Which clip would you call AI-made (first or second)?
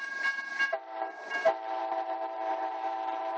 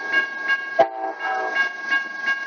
first